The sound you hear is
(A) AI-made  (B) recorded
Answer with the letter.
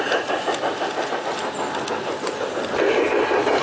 B